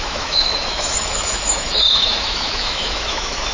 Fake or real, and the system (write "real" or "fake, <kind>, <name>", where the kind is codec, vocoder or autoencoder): fake, autoencoder, DAC-VAE